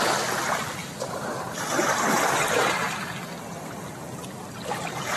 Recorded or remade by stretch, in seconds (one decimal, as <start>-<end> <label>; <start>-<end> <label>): 0.0-0.8 recorded; 0.8-3.9 remade; 3.9-5.2 recorded